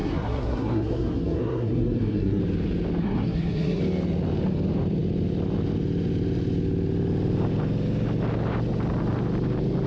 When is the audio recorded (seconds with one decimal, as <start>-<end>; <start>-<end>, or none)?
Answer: 2.4-3.0; 3.8-9.9